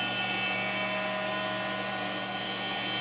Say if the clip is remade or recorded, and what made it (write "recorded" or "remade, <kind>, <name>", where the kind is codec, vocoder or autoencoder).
recorded